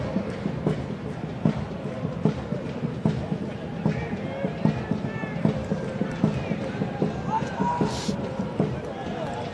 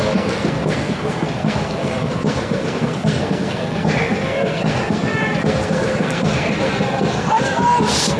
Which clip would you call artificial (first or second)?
second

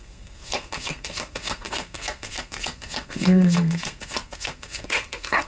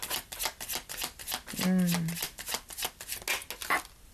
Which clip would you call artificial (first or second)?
first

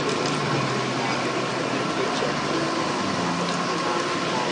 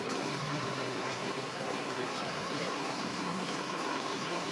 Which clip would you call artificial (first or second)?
second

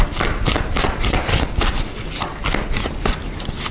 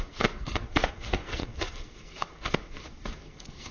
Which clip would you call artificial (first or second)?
second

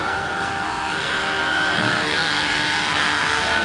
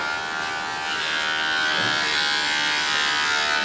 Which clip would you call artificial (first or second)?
first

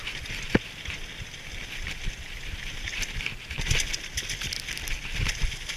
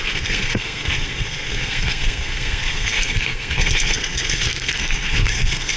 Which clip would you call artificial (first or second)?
second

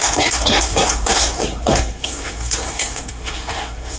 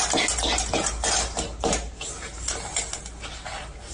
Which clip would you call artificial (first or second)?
first